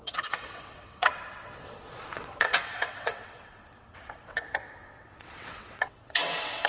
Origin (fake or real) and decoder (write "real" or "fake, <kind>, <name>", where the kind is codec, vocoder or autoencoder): fake, vocoder, WaveNeXt